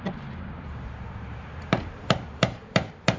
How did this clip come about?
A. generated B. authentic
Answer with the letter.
A